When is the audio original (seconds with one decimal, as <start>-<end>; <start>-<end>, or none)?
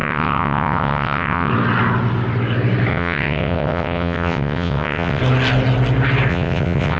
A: 1.5-2.9; 5.2-6.3